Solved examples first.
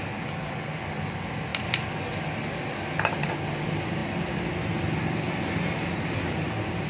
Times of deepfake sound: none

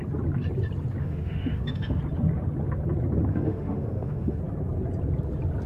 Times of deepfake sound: 1.0-2.0 (autoencoder, DAC-VAE); 3.3-4.4

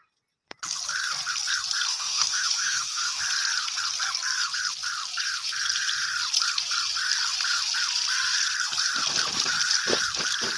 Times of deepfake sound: 1.9-3.2 (autoencoder, DAC-VAE)

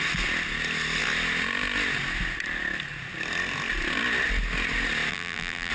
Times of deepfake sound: 5.1-5.7 (vocoder, BigVGAN v2)